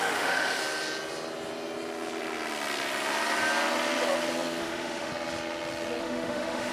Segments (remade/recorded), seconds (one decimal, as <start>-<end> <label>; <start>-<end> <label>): 0.0-0.6 remade; 0.6-4.6 recorded; 4.6-5.1 remade; 5.1-6.0 recorded; 6.0-6.7 remade